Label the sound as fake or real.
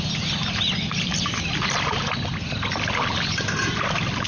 real